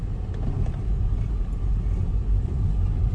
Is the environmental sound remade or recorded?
recorded